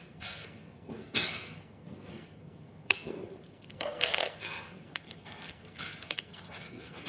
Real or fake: fake